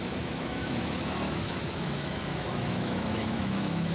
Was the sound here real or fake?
fake